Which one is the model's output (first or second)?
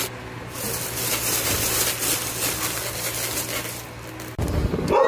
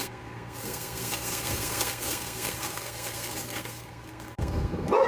second